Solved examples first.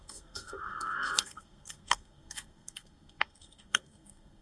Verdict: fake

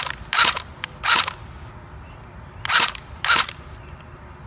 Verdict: real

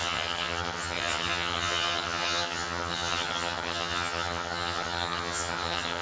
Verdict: fake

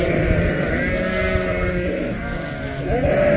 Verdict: real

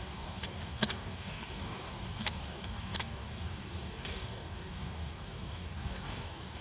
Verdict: fake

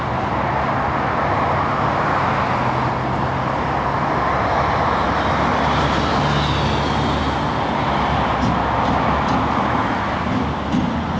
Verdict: real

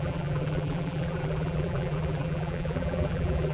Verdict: fake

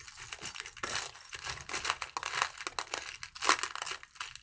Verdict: real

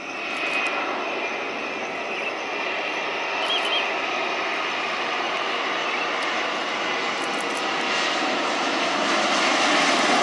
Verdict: real